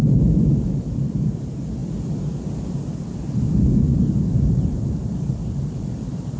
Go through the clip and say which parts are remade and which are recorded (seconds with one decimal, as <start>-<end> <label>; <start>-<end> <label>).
0.0-1.8 remade; 1.8-4.2 recorded; 4.2-6.4 remade